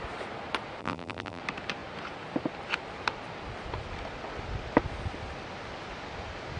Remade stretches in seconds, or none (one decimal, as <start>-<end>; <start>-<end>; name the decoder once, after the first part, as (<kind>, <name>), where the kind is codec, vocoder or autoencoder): 0.8-1.4 (vocoder, BigVGAN v2)